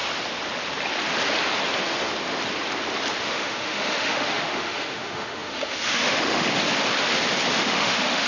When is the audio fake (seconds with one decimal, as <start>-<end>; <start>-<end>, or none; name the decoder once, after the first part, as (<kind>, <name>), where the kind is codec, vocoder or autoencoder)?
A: 3.2-6.6 (autoencoder, DAC-VAE); 7.6-8.3